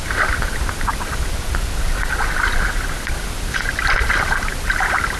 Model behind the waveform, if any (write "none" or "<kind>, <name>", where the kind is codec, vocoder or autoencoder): none